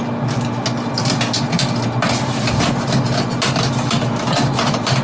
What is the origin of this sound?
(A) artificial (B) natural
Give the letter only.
B